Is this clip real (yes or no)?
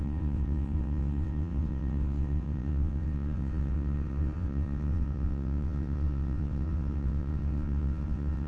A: no